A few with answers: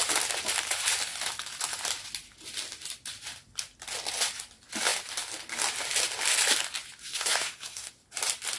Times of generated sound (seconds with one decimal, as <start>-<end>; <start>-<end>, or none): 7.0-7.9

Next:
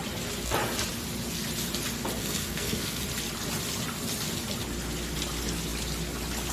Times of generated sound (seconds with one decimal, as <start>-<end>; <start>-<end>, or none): 2.2-3.0

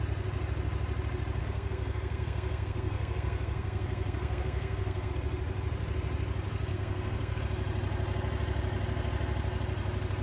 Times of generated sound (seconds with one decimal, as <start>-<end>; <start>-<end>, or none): 1.4-5.1; 6.7-7.4

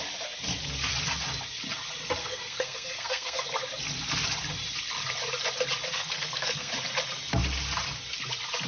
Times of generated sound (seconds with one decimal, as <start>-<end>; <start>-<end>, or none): 2.2-3.4; 5.9-6.7